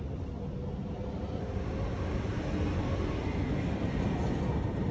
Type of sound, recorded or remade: recorded